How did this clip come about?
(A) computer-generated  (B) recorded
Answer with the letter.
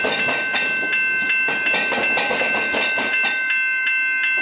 B